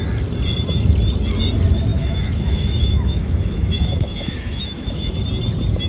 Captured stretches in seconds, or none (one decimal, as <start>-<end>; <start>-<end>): 0.0-1.9; 5.1-5.9